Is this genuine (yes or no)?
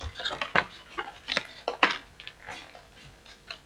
yes